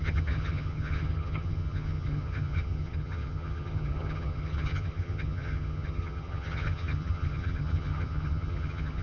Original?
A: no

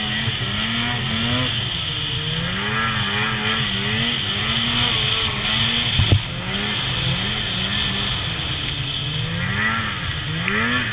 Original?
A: yes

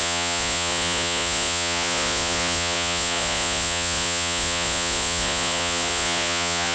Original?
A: no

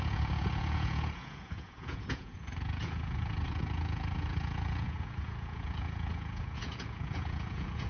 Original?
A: no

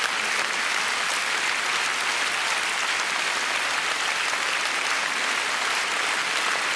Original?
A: yes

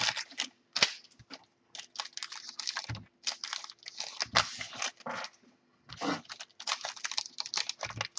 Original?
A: yes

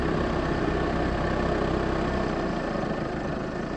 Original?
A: yes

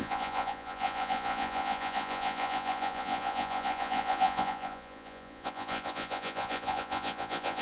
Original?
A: no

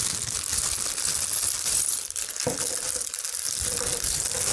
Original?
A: yes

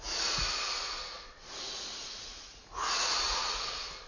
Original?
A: no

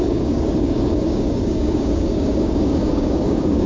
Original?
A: no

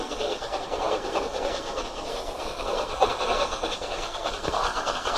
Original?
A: no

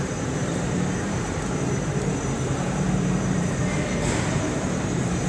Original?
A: no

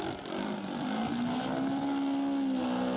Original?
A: yes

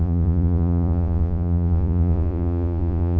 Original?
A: no